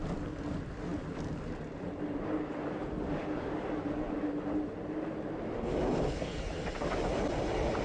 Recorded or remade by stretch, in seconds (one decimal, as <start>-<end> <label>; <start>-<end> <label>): 0.0-7.8 recorded